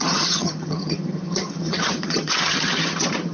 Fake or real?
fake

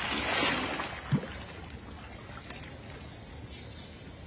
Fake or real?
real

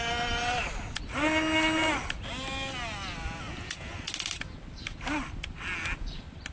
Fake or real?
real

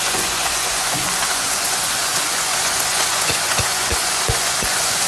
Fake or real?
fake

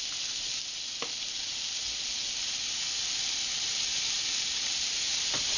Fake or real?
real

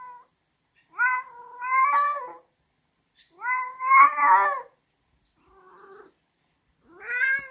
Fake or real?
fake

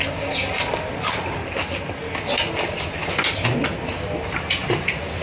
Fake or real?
real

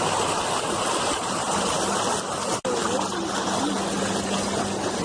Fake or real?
real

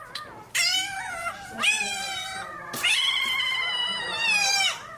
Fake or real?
fake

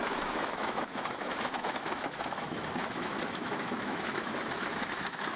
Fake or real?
fake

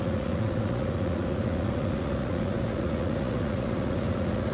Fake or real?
fake